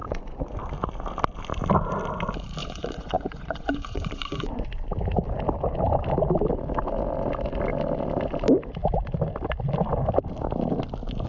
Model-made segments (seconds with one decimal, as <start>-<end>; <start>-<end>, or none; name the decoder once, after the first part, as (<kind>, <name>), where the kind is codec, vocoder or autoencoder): 0.0-0.6 (vocoder, Vocos); 2.6-4.7